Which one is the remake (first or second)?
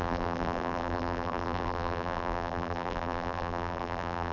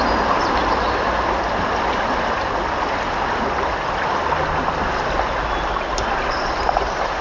first